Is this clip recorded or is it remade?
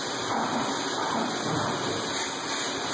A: recorded